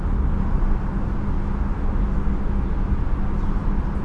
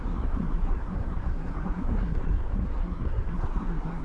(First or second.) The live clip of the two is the first